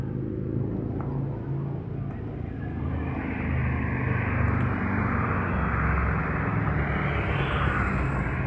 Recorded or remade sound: recorded